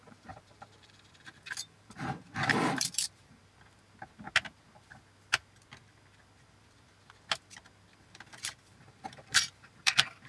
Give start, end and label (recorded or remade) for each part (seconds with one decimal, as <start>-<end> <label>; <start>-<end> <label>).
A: 0.0-3.4 remade; 3.4-8.0 recorded; 8.0-10.3 remade